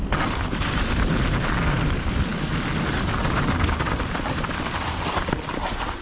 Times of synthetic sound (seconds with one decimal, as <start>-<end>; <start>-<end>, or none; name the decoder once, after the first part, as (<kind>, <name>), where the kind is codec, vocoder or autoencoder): none